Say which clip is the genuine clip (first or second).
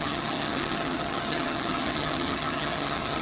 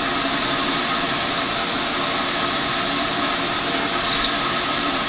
second